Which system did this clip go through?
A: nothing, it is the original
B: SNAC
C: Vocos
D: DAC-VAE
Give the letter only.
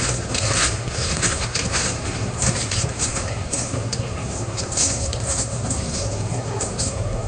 B